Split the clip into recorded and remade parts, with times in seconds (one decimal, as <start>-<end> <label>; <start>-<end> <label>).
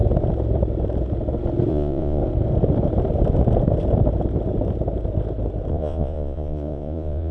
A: 0.0-1.7 recorded; 1.7-2.2 remade; 2.2-5.7 recorded; 5.7-7.3 remade